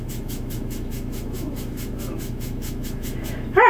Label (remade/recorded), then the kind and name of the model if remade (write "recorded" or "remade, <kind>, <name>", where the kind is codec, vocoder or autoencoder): remade, autoencoder, DAC-VAE